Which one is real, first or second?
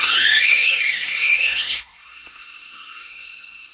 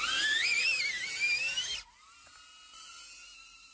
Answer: second